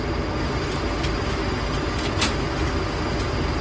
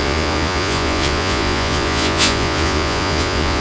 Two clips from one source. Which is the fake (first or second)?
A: second